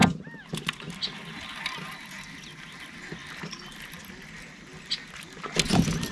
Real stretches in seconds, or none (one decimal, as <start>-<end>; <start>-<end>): 0.0-6.1